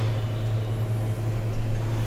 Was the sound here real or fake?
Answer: real